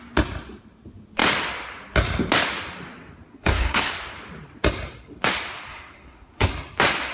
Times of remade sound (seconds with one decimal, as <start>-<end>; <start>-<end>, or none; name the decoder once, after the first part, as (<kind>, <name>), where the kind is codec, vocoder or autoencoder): 3.3-3.9 (codec, SNAC); 5.7-6.5